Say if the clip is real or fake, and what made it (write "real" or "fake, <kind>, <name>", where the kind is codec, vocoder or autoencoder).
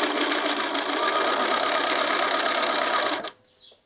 real